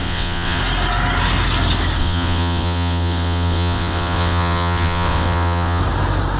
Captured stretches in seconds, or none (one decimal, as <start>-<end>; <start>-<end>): 0.6-2.0; 5.8-6.4

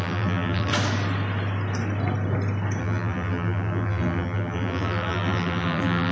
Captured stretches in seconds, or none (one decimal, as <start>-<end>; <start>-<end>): 0.7-2.8

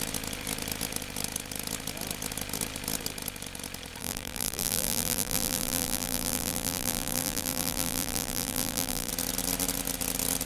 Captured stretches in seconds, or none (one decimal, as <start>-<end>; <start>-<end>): 0.0-4.0; 9.1-10.5